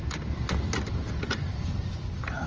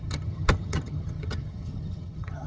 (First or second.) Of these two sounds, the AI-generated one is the second